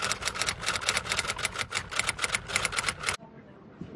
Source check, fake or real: real